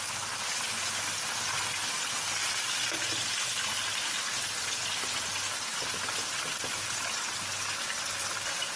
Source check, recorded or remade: recorded